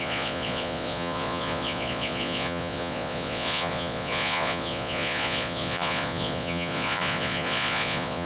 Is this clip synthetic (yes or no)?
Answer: yes